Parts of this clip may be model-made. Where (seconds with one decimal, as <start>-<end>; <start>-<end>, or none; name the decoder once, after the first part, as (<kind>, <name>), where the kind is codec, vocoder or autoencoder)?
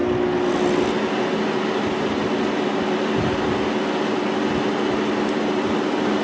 none